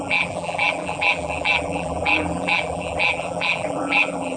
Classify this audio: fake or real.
fake